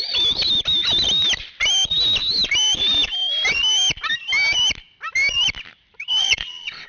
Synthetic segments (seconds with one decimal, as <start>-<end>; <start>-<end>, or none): 6.2-6.9